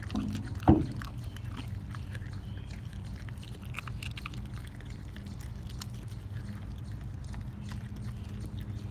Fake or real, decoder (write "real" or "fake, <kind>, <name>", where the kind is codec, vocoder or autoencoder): real